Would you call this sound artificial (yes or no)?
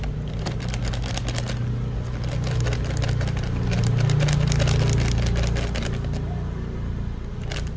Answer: no